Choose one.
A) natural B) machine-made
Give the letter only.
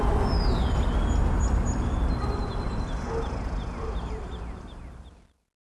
A